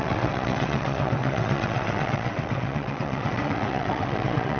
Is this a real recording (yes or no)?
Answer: no